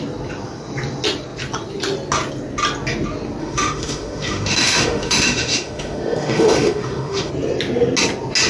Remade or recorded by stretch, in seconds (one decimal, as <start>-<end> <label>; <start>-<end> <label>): 0.0-3.4 recorded; 3.4-7.3 remade; 7.3-8.5 recorded